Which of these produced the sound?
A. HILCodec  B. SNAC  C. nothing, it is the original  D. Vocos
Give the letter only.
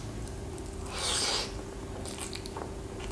C